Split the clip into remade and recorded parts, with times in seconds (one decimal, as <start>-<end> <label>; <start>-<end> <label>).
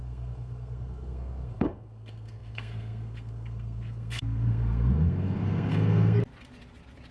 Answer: 0.0-6.2 remade; 6.2-7.1 recorded